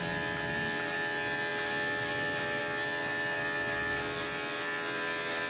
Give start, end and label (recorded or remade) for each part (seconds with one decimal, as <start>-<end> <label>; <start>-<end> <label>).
0.0-5.5 recorded

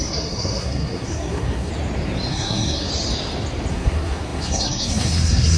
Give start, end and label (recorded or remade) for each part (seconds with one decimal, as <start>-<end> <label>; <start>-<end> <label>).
0.0-1.7 remade; 1.7-2.3 recorded; 2.3-2.9 remade; 2.9-3.7 recorded; 3.7-5.6 remade

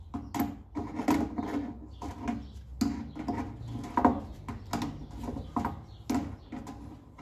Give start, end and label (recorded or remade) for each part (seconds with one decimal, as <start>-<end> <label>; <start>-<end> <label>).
0.0-7.2 recorded

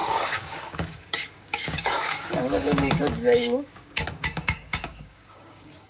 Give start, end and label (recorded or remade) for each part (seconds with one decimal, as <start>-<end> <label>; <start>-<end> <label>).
0.0-5.9 remade